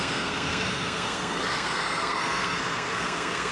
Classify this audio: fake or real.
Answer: fake